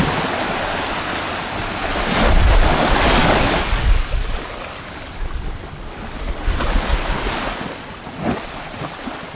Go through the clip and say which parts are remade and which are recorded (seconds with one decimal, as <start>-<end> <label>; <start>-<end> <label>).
0.0-3.2 recorded; 3.2-4.2 remade; 4.2-9.4 recorded